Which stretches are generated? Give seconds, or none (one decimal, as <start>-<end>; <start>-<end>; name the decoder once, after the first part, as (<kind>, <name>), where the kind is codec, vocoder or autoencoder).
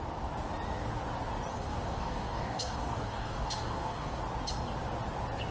1.5-4.2 (codec, DAC)